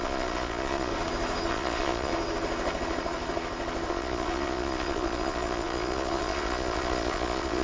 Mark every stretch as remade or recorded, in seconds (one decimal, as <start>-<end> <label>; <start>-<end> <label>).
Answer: 0.0-0.9 remade; 0.9-1.5 recorded; 1.5-2.1 remade; 2.1-3.9 recorded; 3.9-7.6 remade